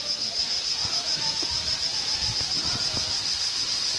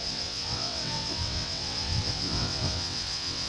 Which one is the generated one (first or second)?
second